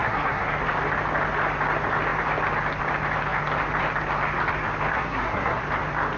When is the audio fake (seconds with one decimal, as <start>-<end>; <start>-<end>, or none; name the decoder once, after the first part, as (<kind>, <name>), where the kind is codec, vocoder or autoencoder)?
0.0-0.6 (codec, SNAC); 4.9-5.6